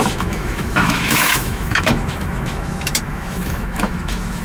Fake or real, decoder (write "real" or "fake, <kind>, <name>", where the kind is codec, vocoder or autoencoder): fake, autoencoder, DAC-VAE